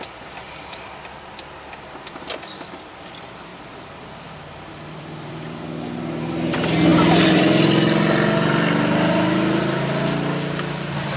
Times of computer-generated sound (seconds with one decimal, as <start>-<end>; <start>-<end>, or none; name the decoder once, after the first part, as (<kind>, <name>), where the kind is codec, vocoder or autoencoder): 3.5-5.6 (vocoder, BigVGAN v2)